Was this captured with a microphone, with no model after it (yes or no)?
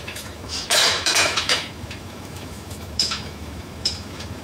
no